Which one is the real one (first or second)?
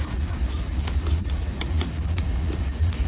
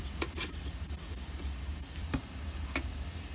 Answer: second